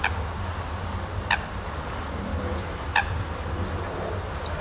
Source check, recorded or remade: recorded